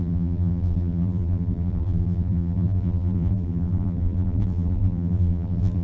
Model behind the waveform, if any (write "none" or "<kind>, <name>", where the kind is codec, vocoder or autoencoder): vocoder, BigVGAN v2